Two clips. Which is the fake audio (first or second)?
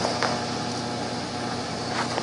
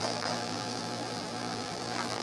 second